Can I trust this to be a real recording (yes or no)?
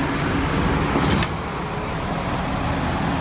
yes